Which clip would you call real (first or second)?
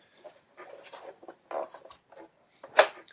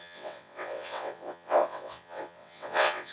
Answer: first